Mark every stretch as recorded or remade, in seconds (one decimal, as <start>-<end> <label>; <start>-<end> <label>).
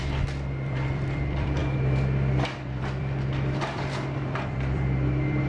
0.0-5.5 remade